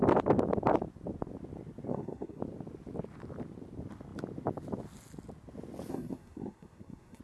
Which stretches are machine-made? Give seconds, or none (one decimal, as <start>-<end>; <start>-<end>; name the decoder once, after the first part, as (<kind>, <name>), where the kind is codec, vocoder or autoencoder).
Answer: 1.9-2.4 (codec, SNAC); 5.9-7.2